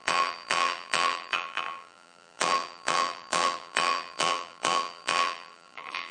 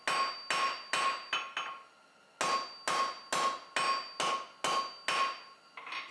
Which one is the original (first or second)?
second